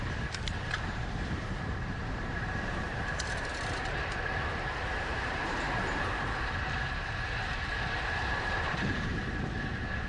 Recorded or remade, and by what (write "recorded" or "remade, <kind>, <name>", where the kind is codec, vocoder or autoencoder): remade, vocoder, BigVGAN v2